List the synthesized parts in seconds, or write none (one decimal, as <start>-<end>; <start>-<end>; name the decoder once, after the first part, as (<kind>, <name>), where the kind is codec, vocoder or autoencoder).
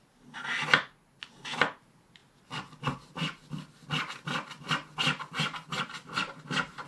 none